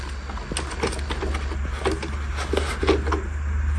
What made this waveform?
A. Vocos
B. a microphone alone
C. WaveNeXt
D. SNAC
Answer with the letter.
B